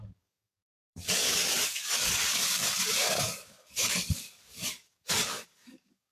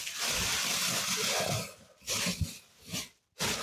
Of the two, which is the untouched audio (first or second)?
second